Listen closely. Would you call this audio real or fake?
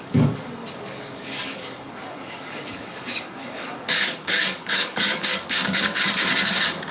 fake